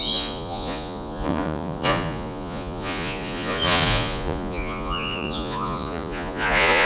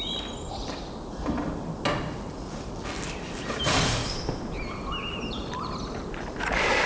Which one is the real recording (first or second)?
second